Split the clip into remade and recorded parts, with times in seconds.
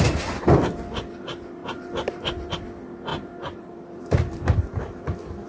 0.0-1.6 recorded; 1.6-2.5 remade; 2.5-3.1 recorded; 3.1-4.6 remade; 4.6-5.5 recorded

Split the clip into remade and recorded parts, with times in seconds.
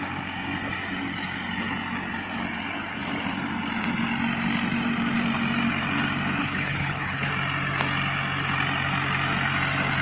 0.0-6.4 recorded; 6.4-7.3 remade; 7.3-10.0 recorded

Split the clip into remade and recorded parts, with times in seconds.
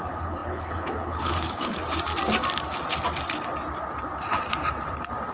0.0-1.8 remade; 1.8-5.3 recorded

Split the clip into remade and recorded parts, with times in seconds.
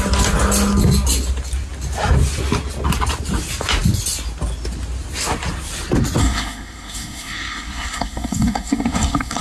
0.0-6.2 recorded; 6.2-9.4 remade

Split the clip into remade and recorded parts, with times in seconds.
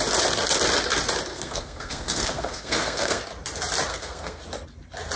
0.0-1.3 recorded; 1.3-3.2 remade; 3.2-3.9 recorded; 3.9-4.4 remade; 4.4-5.2 recorded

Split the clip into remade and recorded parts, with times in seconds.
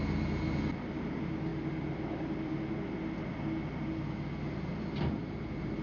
0.0-5.8 recorded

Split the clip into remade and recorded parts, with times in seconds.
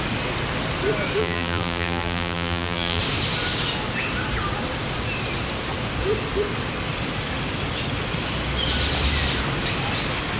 0.0-1.2 recorded; 1.2-3.0 remade; 3.0-10.4 recorded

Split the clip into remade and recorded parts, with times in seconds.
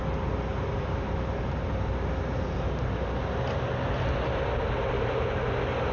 0.0-0.5 recorded; 0.5-1.7 remade; 1.7-5.9 recorded